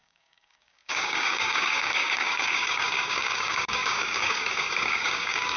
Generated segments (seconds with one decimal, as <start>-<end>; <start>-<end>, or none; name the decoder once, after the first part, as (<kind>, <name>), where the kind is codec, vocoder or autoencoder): 0.0-5.6 (codec, DAC)